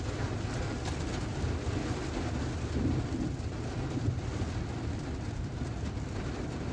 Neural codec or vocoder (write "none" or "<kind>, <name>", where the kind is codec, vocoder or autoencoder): none